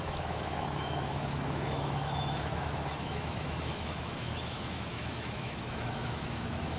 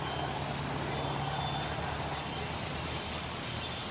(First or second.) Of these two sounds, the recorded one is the second